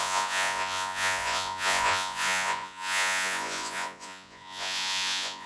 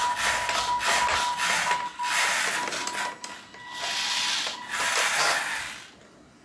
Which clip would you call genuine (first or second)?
second